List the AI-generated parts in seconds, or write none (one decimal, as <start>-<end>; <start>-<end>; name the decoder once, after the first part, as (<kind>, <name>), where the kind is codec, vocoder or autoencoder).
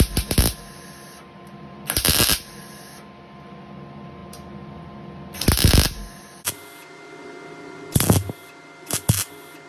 none